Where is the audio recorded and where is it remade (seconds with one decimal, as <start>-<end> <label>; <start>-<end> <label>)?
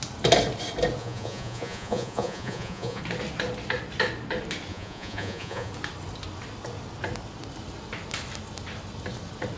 0.0-1.0 recorded; 1.0-3.0 remade; 3.0-4.7 recorded; 4.7-5.7 remade; 5.7-9.6 recorded